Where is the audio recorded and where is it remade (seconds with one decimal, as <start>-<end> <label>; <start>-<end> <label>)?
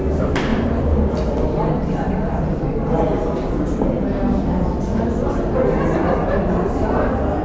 0.0-7.4 recorded